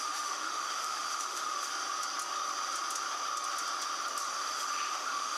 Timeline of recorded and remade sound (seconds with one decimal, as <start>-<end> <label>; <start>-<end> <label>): 0.0-1.7 remade; 1.7-4.3 recorded; 4.3-5.4 remade